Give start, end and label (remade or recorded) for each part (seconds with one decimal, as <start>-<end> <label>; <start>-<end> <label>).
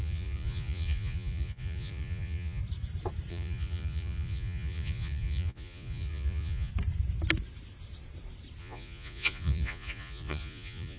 0.0-2.6 remade; 2.6-3.3 recorded; 3.3-6.7 remade; 6.7-8.6 recorded; 8.6-11.0 remade